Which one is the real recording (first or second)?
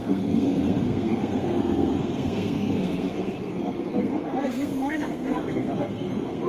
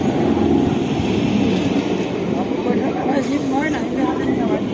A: second